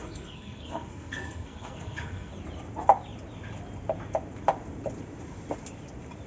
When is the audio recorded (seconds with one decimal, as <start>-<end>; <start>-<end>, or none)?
2.3-6.3